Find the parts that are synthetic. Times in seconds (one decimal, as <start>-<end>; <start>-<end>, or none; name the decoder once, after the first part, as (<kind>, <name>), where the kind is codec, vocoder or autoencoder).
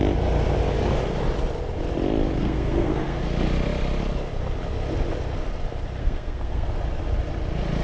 2.4-3.2 (codec, SNAC); 6.0-6.7